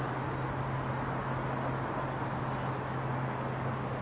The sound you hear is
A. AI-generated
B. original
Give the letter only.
B